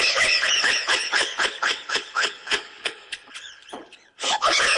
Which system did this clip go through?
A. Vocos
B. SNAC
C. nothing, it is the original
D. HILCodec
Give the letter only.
D